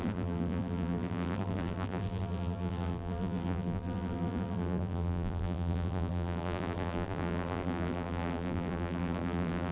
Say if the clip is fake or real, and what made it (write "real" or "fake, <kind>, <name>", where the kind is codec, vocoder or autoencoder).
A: fake, vocoder, BigVGAN v2